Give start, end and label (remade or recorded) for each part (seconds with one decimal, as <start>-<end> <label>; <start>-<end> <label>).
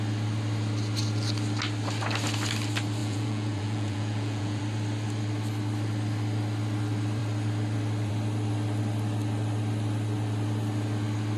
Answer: 0.0-3.0 recorded; 3.0-4.6 remade; 4.6-11.4 recorded